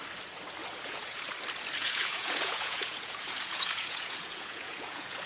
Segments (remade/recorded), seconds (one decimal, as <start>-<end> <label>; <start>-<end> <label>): 0.0-0.6 recorded; 0.6-1.2 remade; 1.2-1.8 recorded; 1.8-5.3 remade